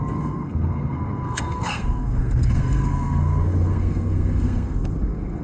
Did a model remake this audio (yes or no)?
yes